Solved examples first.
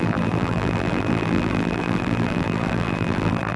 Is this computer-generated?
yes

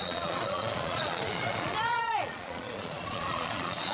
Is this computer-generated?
yes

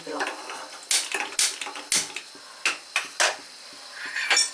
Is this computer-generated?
no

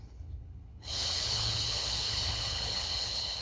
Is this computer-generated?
yes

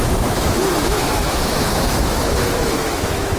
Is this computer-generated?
yes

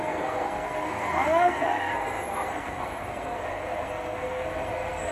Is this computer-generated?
yes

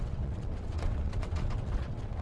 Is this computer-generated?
yes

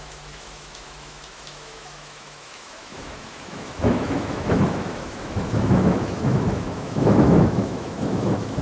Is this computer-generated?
yes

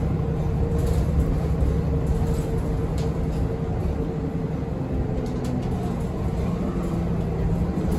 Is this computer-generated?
no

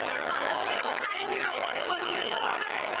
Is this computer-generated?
yes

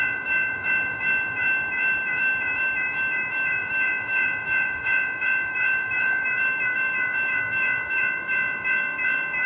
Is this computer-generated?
yes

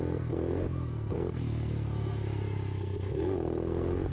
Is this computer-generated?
yes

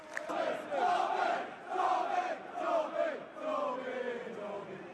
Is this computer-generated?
no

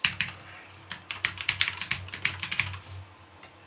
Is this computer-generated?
no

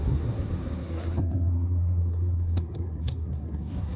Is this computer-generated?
yes